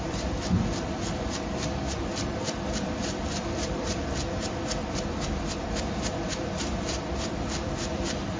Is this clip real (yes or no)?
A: no